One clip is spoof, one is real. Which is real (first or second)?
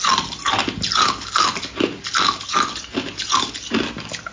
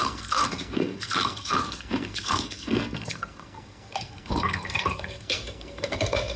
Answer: first